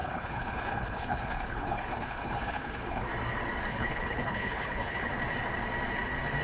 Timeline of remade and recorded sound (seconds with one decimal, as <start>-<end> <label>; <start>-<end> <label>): 0.0-3.1 remade; 3.1-3.7 recorded; 3.7-5.1 remade; 5.1-6.4 recorded